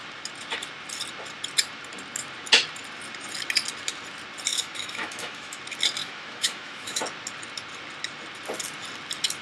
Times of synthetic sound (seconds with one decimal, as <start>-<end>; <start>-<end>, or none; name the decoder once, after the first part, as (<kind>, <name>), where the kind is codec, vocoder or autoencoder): 4.5-5.6 (autoencoder, DAC-VAE); 6.0-7.0